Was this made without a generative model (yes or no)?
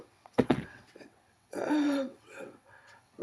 no